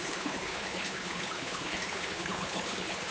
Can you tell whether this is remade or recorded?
remade